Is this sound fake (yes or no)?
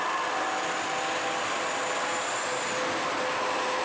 no